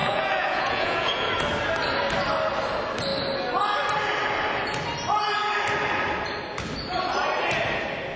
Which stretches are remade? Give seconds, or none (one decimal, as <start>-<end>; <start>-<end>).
0.0-1.3